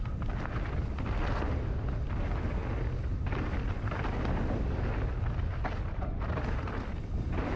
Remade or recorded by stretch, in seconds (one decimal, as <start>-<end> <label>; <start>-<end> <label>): 0.0-7.6 recorded